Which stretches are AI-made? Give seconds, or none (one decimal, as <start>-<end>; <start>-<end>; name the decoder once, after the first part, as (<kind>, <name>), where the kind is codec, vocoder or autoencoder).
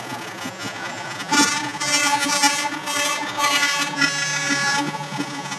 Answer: 0.0-5.6 (vocoder, Vocos)